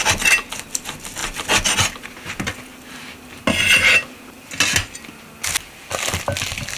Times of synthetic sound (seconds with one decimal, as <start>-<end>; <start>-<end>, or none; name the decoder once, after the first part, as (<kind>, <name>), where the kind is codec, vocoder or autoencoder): none